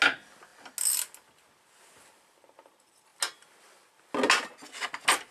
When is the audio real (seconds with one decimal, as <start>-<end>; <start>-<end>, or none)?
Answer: 0.0-5.3